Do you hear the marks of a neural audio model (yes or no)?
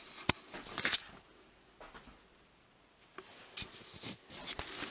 no